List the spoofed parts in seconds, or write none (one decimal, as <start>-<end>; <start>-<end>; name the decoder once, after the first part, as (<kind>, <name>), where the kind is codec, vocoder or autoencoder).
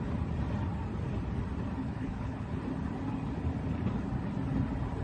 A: 1.8-2.6 (codec, HILCodec)